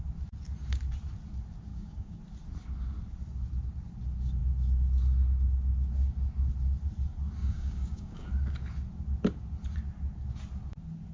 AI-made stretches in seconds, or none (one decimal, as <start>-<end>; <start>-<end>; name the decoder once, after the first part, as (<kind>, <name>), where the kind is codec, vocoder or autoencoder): 1.7-2.2 (codec, DAC); 7.4-8.3